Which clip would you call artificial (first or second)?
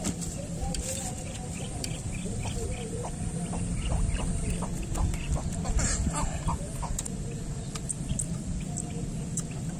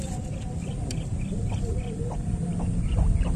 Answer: first